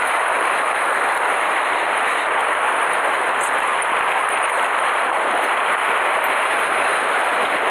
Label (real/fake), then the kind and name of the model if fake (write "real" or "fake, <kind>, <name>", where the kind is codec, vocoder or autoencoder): real